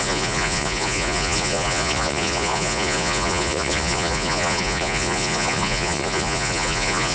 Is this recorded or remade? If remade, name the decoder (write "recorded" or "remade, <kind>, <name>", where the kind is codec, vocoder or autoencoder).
remade, vocoder, Vocos